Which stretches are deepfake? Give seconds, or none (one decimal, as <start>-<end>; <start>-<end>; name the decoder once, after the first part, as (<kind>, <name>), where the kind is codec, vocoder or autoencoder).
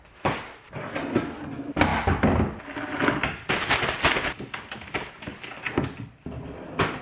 none